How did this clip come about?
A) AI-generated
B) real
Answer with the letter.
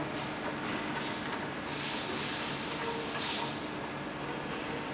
B